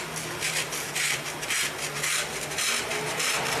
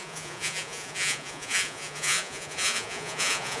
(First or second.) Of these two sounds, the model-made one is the second